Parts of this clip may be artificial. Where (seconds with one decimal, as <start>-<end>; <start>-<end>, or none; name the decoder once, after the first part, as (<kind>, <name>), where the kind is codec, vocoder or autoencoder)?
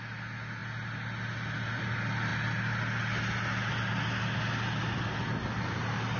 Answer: none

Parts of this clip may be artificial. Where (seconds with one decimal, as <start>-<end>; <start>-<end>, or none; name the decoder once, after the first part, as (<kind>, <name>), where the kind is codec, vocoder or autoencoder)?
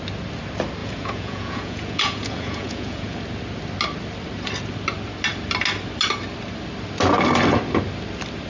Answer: 0.8-3.2 (vocoder, Vocos)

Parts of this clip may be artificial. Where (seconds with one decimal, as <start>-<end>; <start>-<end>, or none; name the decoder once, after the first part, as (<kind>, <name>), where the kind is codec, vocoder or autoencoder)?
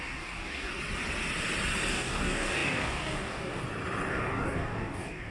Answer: 0.0-0.7 (codec, DAC); 1.9-3.6; 4.1-5.3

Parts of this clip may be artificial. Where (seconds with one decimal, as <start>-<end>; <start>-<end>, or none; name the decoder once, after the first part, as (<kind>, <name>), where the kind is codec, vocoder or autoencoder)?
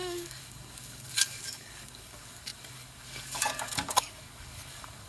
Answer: 0.0-5.1 (codec, DAC)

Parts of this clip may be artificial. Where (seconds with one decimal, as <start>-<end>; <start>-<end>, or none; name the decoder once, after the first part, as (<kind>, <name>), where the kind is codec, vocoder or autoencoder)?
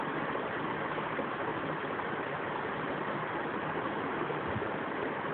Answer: none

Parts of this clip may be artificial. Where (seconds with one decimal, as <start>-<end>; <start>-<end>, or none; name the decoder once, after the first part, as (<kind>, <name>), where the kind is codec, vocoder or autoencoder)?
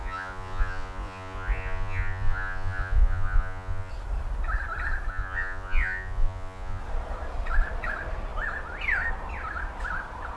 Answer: 0.0-3.9 (vocoder, Vocos); 5.1-6.8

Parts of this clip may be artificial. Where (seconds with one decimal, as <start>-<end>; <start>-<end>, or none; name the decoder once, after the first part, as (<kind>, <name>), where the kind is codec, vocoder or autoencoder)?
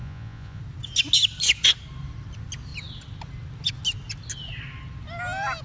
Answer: 0.0-0.6 (vocoder, Vocos)